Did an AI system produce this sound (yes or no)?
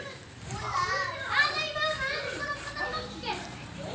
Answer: yes